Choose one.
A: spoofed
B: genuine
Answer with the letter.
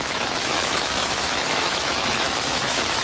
A